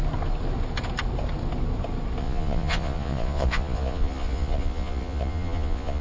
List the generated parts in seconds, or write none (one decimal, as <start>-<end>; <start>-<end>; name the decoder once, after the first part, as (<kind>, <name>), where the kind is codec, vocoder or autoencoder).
2.2-6.0 (vocoder, Vocos)